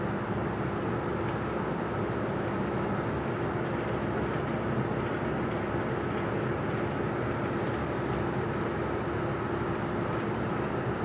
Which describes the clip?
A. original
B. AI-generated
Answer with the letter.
A